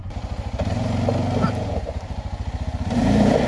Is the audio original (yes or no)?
no